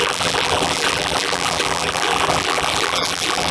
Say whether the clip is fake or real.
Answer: fake